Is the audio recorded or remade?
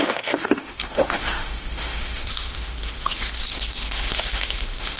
remade